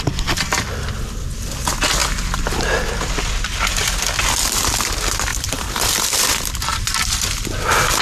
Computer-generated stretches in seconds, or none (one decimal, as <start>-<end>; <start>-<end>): 5.3-6.4

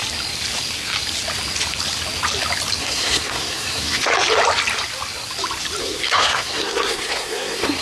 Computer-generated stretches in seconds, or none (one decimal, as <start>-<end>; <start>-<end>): 2.8-4.1; 5.8-7.8

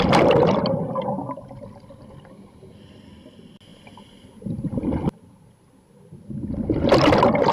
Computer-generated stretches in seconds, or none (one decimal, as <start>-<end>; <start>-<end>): none

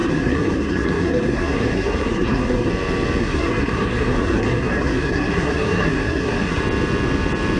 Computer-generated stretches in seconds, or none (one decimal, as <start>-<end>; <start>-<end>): 0.0-2.7; 3.2-6.6